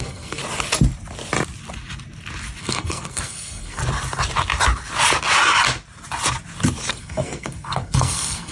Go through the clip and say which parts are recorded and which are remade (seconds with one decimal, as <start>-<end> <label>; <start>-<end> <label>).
0.0-0.4 remade; 0.4-2.6 recorded; 2.6-3.8 remade; 3.8-6.9 recorded; 6.9-8.5 remade